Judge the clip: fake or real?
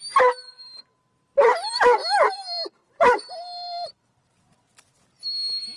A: real